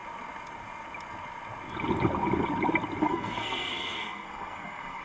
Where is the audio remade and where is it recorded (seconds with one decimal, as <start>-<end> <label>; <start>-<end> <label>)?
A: 0.0-3.0 recorded; 3.0-5.0 remade